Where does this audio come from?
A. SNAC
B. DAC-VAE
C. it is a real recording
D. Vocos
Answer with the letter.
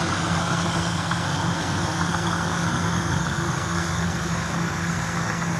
A